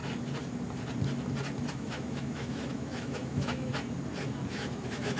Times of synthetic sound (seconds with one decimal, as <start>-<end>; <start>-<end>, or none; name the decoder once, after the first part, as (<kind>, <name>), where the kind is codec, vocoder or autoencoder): 1.7-3.7 (autoencoder, DAC-VAE); 4.5-5.2